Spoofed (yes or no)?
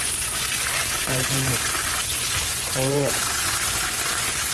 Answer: yes